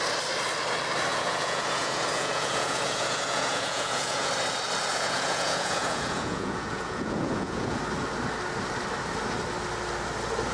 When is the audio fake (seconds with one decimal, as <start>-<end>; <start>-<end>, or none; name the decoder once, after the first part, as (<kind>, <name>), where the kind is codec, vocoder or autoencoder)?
1.1-4.3 (vocoder, Vocos); 4.9-7.8